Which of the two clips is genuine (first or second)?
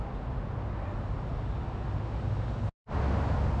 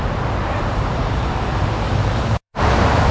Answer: first